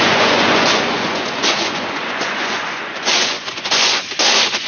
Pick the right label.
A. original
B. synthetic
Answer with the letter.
B